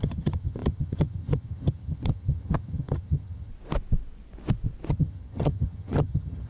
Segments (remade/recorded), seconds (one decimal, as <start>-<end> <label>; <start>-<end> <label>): 0.0-3.5 remade; 3.5-4.9 recorded; 4.9-6.5 remade